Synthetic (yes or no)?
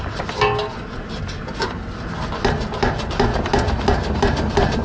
no